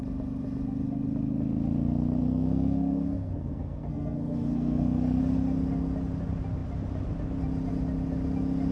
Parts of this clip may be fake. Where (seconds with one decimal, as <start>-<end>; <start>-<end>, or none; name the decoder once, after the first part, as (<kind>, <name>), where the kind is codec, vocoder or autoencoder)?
2.2-5.2 (codec, SNAC)